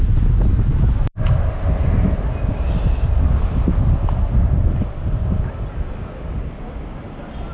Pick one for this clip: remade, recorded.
recorded